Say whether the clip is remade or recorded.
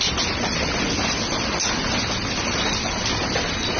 recorded